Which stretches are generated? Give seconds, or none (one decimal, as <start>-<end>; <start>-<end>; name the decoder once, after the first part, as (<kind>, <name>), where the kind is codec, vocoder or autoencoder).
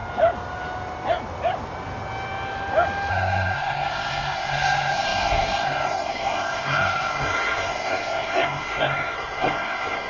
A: 3.1-10.1 (codec, SNAC)